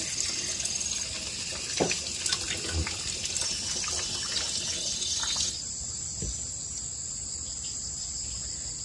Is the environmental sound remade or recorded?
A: recorded